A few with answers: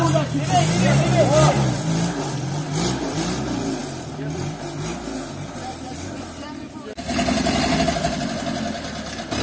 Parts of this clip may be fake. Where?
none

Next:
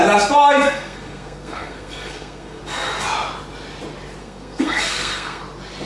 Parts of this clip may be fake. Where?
0.6-2.6; 4.2-5.4

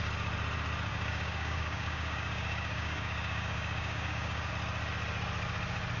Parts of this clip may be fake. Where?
0.9-4.5

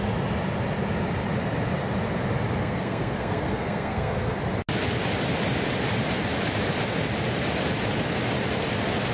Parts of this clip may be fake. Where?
2.6-4.4